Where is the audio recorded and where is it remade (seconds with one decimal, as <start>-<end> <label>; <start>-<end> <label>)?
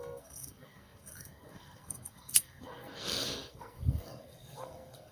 0.0-5.1 remade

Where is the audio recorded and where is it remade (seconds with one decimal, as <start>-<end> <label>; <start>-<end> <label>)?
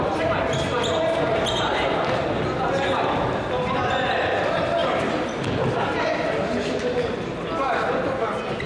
0.0-8.7 recorded